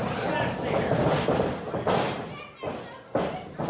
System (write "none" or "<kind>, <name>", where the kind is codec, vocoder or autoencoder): none